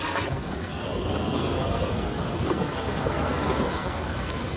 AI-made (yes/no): yes